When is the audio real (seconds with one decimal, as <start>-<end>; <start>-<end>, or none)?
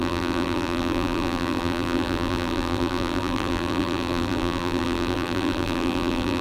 none